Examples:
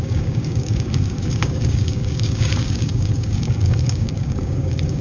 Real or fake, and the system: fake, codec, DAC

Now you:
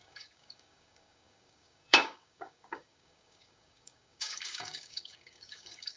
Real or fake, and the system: fake, codec, DAC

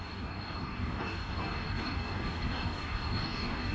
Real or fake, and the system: fake, codec, DAC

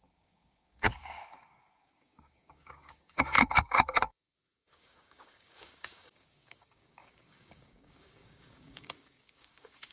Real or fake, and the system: fake, codec, DAC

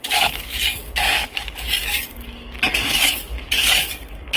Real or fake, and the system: fake, codec, DAC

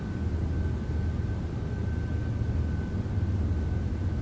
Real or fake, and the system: real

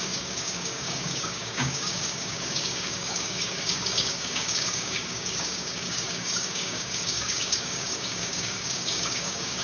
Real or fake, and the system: fake, codec, DAC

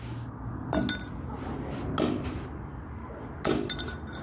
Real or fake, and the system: real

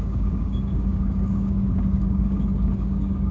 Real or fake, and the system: fake, codec, DAC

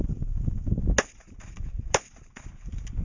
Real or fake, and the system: real